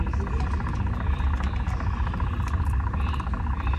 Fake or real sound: real